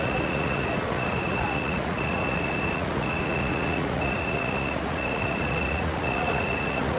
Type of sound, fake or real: fake